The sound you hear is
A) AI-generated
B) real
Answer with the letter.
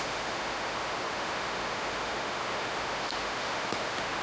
A